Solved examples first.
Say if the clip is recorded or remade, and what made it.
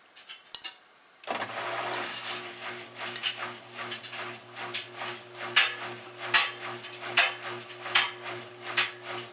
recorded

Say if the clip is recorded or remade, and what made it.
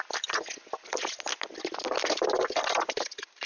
recorded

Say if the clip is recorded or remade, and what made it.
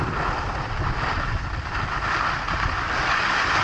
recorded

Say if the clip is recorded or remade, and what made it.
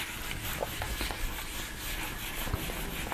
recorded